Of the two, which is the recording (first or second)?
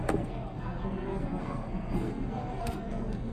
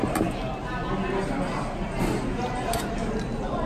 second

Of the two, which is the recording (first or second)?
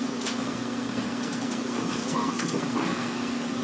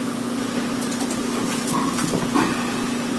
second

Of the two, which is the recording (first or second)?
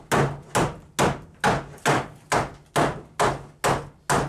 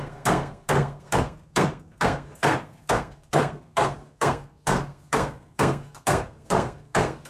first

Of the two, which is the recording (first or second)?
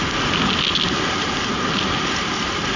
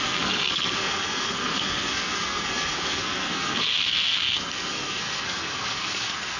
first